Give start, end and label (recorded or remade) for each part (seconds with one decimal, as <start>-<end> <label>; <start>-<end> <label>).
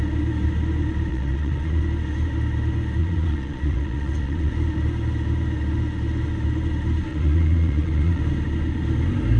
0.0-1.1 recorded; 1.1-1.8 remade; 1.8-3.0 recorded; 3.0-4.5 remade; 4.5-7.1 recorded; 7.1-8.2 remade; 8.2-9.4 recorded